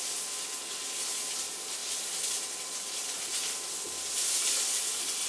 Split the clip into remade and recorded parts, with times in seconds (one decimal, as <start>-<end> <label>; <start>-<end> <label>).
0.0-5.3 recorded